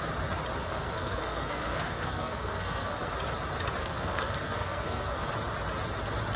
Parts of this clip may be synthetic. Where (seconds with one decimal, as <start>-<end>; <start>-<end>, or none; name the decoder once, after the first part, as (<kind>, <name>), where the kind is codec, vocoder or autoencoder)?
0.6-3.1 (codec, SNAC); 3.8-5.3